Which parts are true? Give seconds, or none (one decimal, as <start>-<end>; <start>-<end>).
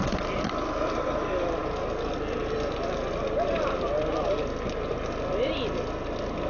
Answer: 0.0-6.5